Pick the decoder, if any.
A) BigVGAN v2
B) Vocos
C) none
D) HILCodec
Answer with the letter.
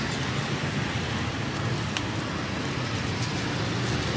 C